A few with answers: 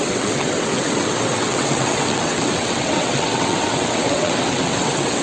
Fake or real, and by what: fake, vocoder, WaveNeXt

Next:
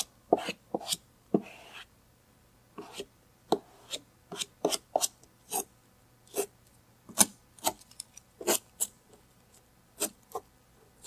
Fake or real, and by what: real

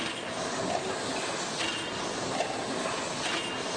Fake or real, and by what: real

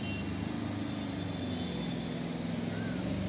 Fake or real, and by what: real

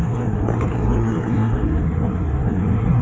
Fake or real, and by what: fake, codec, SNAC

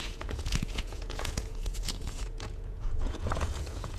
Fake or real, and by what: fake, vocoder, Vocos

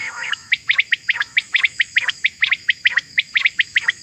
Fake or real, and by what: fake, autoencoder, DAC-VAE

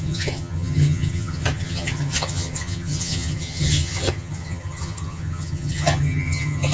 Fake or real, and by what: fake, vocoder, HiFi-GAN